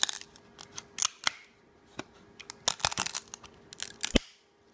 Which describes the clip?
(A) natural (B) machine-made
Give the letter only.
A